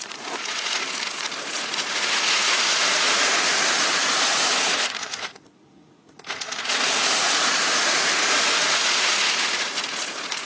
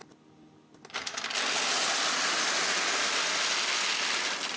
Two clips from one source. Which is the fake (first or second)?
first